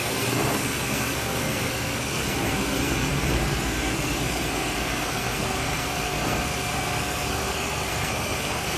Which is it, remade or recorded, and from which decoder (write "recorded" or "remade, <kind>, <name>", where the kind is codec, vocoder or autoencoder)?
remade, codec, SNAC